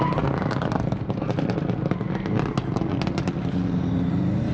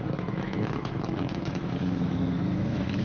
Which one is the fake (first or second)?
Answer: second